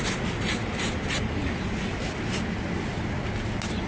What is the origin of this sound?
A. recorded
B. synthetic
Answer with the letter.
A